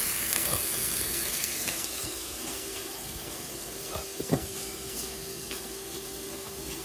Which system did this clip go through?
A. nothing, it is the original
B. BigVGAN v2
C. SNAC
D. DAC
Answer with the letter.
C